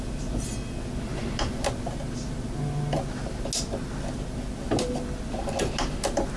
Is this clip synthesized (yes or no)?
no